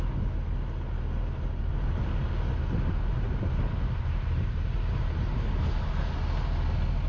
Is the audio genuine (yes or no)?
yes